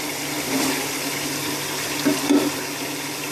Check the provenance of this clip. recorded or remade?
recorded